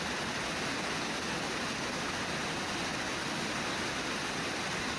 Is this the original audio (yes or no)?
yes